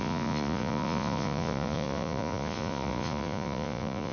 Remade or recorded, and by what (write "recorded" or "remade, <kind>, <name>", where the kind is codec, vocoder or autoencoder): remade, vocoder, Vocos